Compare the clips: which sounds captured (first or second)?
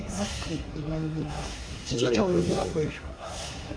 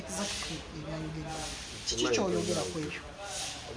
second